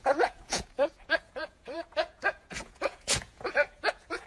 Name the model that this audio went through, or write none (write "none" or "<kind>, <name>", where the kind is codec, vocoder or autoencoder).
vocoder, Vocos